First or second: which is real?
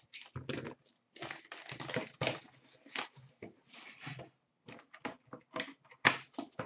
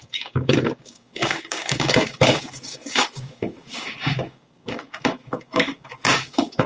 first